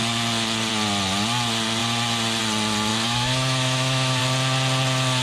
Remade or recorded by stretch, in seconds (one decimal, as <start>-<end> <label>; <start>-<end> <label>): 0.0-2.9 recorded; 2.9-4.2 remade; 4.2-5.2 recorded